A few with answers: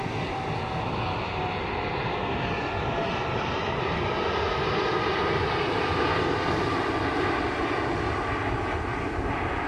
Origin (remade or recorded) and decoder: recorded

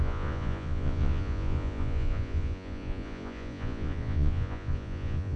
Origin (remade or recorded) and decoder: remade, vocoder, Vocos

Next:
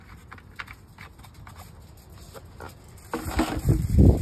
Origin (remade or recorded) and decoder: recorded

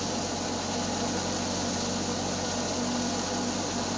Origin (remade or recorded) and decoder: recorded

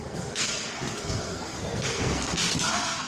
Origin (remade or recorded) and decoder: remade, codec, SNAC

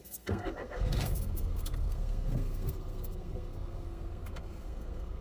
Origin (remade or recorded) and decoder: remade, codec, SNAC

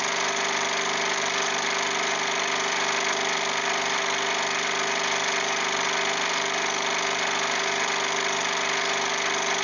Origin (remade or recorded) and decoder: recorded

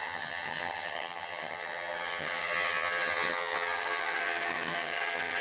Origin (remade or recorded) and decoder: remade, vocoder, HiFi-GAN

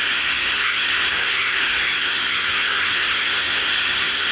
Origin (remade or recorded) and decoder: remade, codec, SNAC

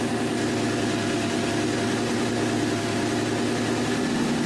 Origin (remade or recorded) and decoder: recorded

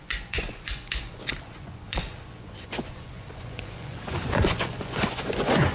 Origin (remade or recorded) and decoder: remade, vocoder, Vocos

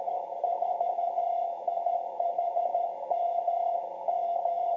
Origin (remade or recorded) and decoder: remade, vocoder, HiFi-GAN